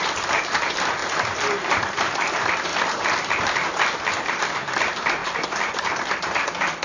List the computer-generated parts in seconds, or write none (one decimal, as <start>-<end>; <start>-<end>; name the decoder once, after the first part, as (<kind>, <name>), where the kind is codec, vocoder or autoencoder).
0.0-2.7 (vocoder, BigVGAN v2); 4.1-6.8